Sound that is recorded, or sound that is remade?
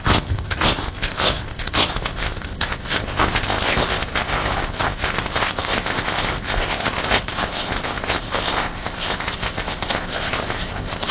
remade